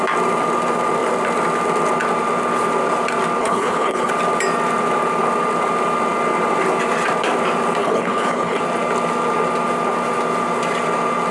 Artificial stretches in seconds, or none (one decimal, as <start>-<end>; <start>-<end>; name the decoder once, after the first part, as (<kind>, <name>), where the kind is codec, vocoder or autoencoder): 3.4-4.1 (codec, HILCodec); 7.8-8.6